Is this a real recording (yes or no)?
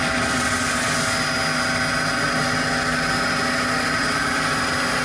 yes